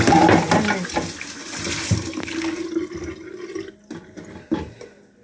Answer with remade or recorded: recorded